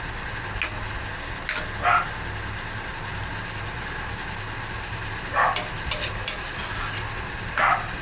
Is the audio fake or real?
real